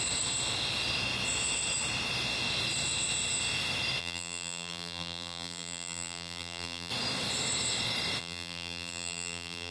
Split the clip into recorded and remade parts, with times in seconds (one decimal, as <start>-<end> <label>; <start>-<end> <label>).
0.0-4.0 recorded; 4.0-6.9 remade; 6.9-8.2 recorded; 8.2-9.7 remade